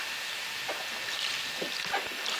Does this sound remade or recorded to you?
recorded